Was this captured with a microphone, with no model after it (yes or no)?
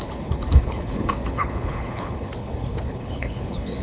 no